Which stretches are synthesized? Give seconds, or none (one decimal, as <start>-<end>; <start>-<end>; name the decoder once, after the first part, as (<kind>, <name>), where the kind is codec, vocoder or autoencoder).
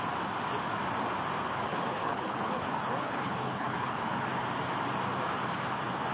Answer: 1.7-4.0 (codec, HILCodec)